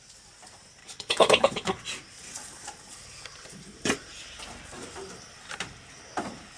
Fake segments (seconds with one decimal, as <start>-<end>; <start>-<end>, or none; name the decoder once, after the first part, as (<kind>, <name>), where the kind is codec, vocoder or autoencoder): 0.8-1.8 (codec, HILCodec)